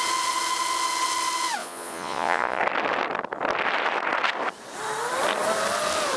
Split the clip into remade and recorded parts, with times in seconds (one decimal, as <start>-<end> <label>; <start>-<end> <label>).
0.0-1.6 recorded; 1.6-2.6 remade; 2.6-6.2 recorded